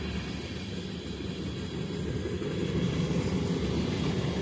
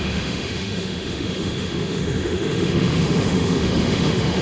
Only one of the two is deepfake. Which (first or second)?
second